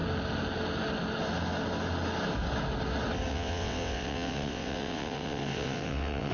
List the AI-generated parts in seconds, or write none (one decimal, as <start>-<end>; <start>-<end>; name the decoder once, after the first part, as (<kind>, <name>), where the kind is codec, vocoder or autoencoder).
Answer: 3.3-6.3 (vocoder, WaveNeXt)